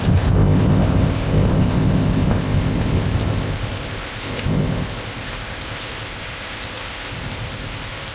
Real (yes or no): no